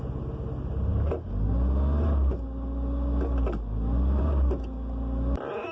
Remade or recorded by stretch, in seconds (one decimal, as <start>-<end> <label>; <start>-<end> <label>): 0.0-5.7 recorded